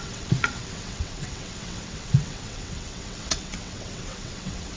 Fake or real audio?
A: fake